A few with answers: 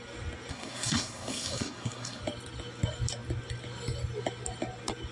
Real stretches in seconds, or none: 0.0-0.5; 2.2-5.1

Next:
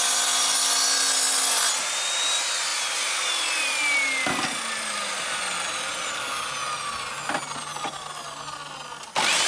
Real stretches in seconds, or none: 0.0-9.5

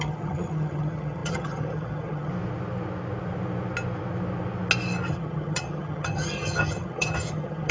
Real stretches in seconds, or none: 2.3-5.1